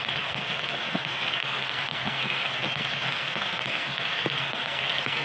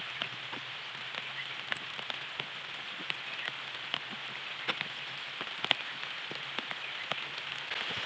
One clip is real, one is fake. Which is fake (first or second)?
first